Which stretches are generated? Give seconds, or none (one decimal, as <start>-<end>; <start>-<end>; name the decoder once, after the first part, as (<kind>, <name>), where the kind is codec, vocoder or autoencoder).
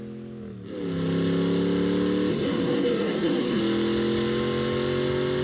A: 2.3-3.6 (codec, SNAC)